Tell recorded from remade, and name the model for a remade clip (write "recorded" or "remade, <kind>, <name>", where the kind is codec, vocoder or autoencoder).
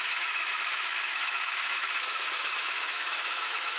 remade, autoencoder, DAC-VAE